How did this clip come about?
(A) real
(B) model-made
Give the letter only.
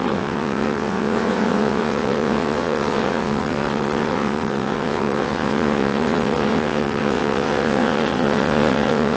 B